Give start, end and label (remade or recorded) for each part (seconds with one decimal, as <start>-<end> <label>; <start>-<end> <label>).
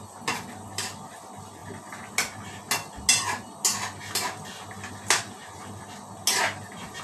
0.0-7.0 recorded